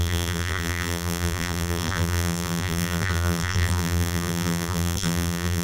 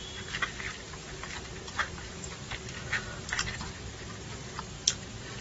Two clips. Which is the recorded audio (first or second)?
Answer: second